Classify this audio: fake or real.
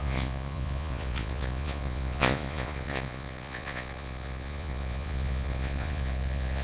fake